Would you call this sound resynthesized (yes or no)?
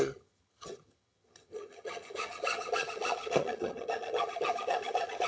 yes